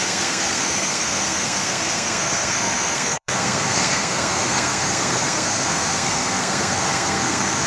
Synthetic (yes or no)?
yes